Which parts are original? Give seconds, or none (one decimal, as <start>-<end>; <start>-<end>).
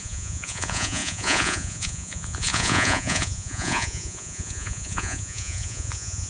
none